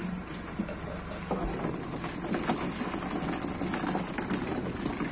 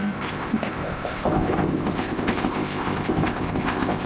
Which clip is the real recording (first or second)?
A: first